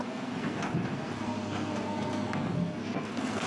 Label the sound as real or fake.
fake